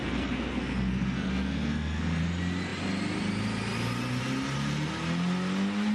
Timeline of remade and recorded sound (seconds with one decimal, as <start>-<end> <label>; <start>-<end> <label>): 0.0-2.2 remade; 2.2-5.9 recorded